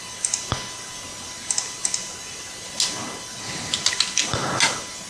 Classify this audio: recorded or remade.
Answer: recorded